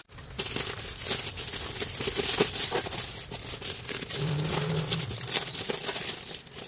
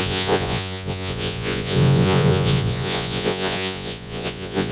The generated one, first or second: second